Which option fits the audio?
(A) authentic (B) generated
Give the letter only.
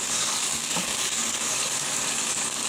B